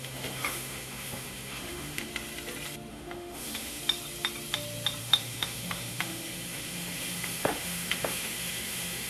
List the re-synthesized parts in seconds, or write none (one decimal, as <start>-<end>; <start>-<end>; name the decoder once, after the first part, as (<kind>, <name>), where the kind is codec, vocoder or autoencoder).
0.0-2.1 (autoencoder, DAC-VAE); 2.9-3.8; 5.0-9.1

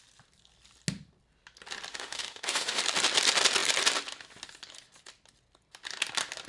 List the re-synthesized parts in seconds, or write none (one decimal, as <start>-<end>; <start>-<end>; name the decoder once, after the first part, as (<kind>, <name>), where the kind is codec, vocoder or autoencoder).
1.9-2.8 (autoencoder, DAC-VAE)